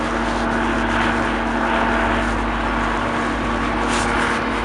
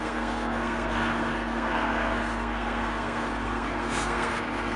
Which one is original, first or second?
first